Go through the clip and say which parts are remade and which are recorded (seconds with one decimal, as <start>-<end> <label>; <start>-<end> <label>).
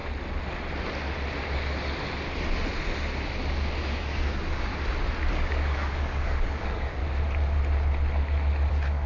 0.0-3.8 recorded; 3.8-4.7 remade; 4.7-5.3 recorded; 5.3-7.0 remade; 7.0-8.7 recorded; 8.7-9.1 remade